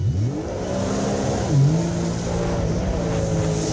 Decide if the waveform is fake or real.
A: real